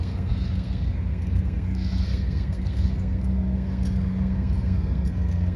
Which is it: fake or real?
fake